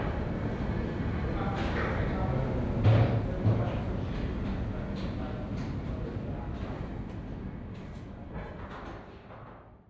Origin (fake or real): real